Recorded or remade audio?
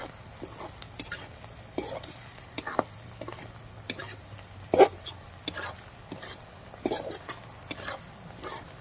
recorded